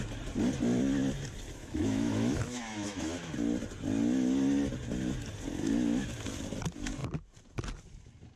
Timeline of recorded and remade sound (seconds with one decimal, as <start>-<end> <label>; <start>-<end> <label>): 0.0-1.6 recorded; 1.6-3.3 remade; 3.3-8.4 recorded